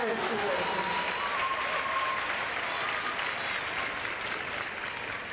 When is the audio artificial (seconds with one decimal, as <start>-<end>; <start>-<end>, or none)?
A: 0.0-0.6